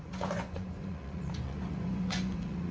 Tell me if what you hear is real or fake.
fake